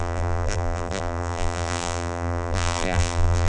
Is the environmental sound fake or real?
fake